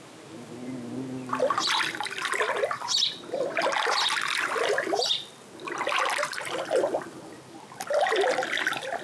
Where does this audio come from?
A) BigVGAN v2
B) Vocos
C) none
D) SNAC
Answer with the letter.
C